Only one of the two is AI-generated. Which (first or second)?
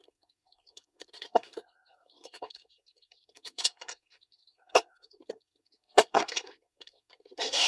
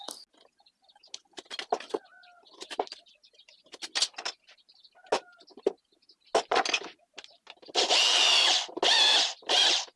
first